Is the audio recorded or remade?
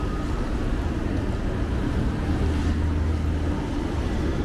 recorded